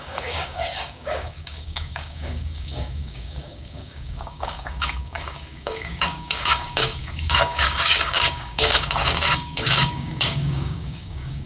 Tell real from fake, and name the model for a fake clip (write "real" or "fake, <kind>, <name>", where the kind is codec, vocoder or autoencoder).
fake, codec, DAC